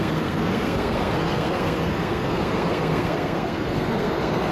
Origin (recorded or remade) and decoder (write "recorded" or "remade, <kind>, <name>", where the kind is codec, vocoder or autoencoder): remade, codec, SNAC